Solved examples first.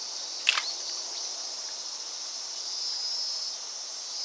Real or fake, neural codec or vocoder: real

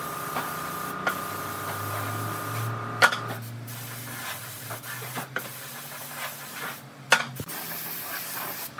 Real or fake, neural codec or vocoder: real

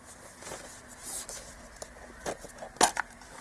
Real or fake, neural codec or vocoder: real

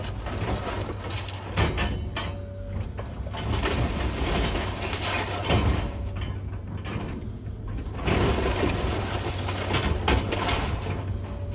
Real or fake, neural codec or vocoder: real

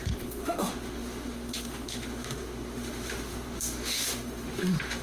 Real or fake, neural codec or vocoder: fake, autoencoder, DAC-VAE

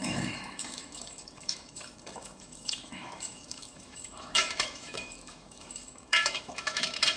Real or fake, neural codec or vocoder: fake, autoencoder, DAC-VAE